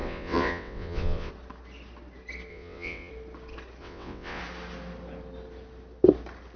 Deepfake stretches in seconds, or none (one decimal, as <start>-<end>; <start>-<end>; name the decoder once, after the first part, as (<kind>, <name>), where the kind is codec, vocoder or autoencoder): 0.0-1.3 (vocoder, WaveNeXt); 2.5-3.1; 3.8-4.4